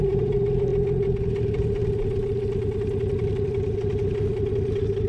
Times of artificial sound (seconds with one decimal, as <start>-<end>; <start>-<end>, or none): 0.0-0.7; 1.4-1.8